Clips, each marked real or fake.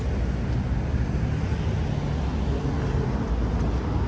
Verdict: real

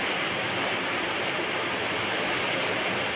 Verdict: real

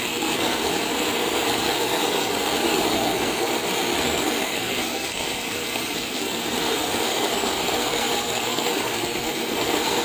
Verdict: fake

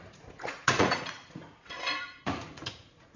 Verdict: fake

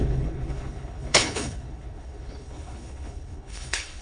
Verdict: fake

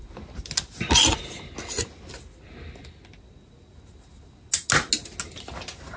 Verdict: real